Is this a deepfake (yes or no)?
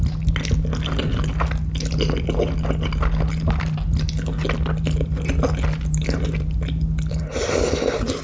no